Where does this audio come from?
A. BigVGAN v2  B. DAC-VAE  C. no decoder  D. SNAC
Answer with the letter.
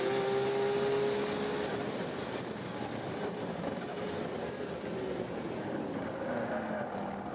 C